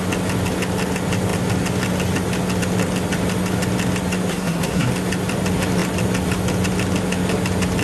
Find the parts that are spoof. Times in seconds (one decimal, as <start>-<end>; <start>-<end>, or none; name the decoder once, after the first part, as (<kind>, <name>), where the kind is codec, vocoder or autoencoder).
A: 4.3-4.9 (codec, SNAC)